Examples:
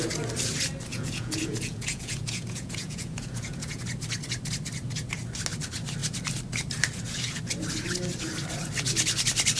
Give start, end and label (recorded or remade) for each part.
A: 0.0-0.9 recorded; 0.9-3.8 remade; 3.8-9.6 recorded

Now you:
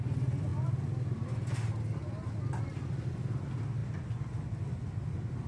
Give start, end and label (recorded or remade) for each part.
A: 0.0-5.5 recorded

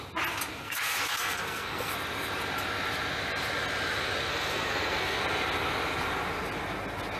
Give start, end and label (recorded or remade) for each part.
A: 0.0-0.5 recorded; 0.5-1.9 remade; 1.9-4.3 recorded; 4.3-5.2 remade; 5.2-7.2 recorded

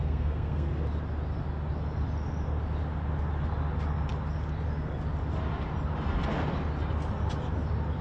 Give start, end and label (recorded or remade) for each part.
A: 0.0-0.7 remade; 0.7-8.0 recorded

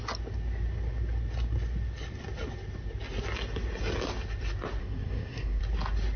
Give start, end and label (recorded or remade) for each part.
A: 0.0-4.8 recorded; 4.8-5.6 remade; 5.6-6.2 recorded

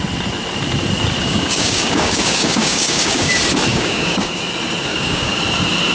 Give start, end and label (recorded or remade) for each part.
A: 0.0-1.2 recorded; 1.2-3.3 remade; 3.3-3.7 recorded; 3.7-4.4 remade; 4.4-4.9 recorded; 4.9-5.4 remade; 5.4-5.9 recorded

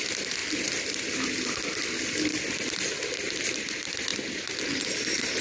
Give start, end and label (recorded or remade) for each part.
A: 0.0-5.4 recorded